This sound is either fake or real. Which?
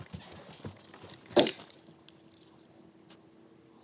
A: real